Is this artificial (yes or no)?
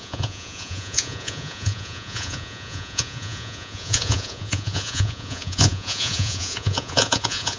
yes